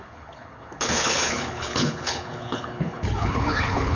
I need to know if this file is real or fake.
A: fake